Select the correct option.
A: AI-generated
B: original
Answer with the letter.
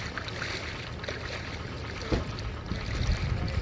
B